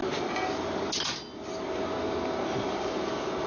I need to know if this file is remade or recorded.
recorded